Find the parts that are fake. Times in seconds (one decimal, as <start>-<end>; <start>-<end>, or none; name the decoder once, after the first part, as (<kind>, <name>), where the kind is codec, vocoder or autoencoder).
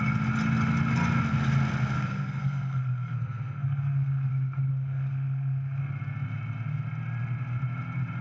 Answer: 1.9-4.3 (codec, SNAC); 4.7-5.8